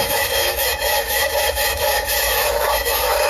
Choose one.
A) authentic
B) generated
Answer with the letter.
B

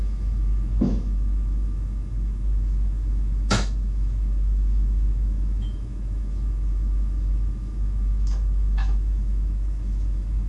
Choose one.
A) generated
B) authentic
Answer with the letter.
A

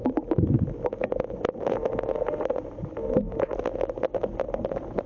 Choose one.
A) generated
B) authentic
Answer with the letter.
B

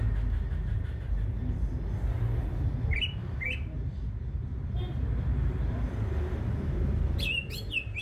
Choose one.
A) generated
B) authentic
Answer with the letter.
B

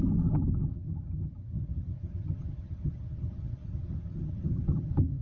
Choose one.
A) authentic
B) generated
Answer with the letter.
B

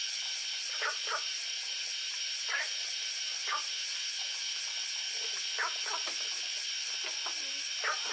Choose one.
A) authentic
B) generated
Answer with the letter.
A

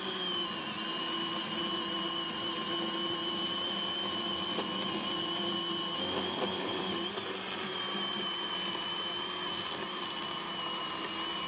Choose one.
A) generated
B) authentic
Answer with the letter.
B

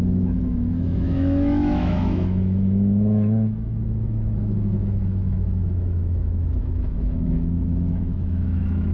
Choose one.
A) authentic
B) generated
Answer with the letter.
B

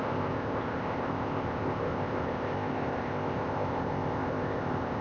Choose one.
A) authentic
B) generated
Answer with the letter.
B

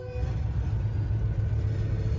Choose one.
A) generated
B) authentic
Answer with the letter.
B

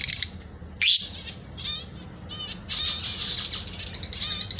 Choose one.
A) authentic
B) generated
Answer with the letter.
A